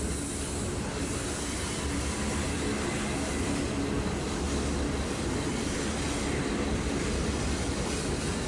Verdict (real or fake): real